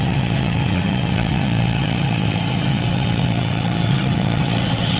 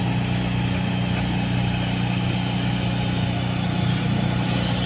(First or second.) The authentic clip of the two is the second